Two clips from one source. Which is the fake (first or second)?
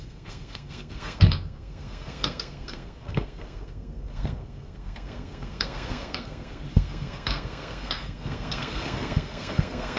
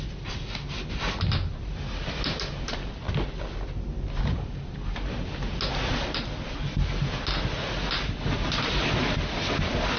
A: first